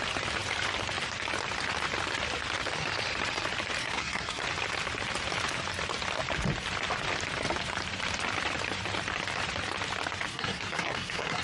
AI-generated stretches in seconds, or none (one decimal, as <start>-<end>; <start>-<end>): 3.8-4.4; 10.3-11.4